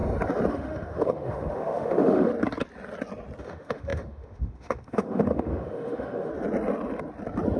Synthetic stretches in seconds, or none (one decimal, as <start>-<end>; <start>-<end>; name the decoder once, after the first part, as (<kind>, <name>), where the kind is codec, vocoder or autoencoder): 0.5-2.3 (autoencoder, DAC-VAE); 3.4-6.3

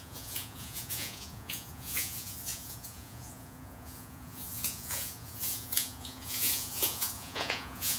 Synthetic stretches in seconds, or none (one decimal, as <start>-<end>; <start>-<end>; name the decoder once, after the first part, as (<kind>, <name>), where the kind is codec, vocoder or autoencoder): 0.0-8.0 (vocoder, Vocos)